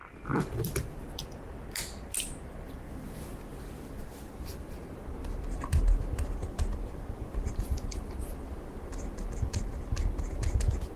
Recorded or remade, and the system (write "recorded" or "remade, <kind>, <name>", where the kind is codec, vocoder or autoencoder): recorded